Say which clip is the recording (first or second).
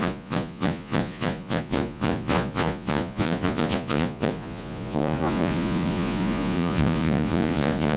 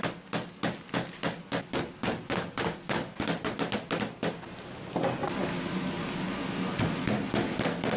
second